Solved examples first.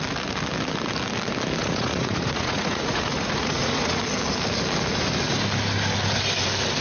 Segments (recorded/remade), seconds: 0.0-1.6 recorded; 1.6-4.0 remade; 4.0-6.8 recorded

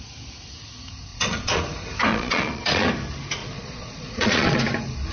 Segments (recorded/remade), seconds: 0.0-1.1 recorded; 1.1-1.6 remade; 1.6-2.1 recorded; 2.1-2.9 remade; 2.9-3.4 recorded; 3.4-4.6 remade; 4.6-5.1 recorded

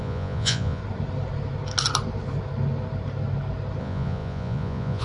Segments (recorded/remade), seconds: 0.0-0.8 remade; 0.8-3.8 recorded; 3.8-5.0 remade

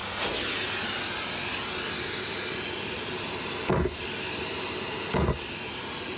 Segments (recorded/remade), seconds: 0.0-6.2 recorded

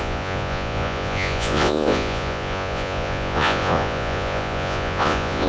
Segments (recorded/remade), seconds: 0.0-5.5 remade

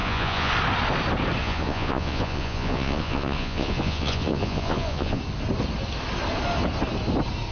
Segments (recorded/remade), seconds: 0.0-0.5 remade; 0.5-1.4 recorded; 1.4-5.2 remade; 5.2-7.5 recorded

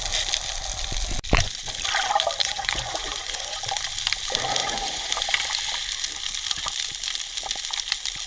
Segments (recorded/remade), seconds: 0.0-2.4 recorded; 2.4-3.6 remade; 3.6-4.6 recorded; 4.6-5.1 remade; 5.1-8.3 recorded

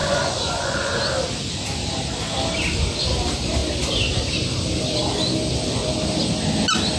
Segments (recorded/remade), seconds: 0.0-1.0 remade; 1.0-7.0 recorded